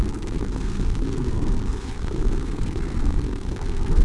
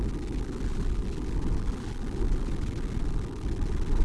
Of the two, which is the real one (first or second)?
second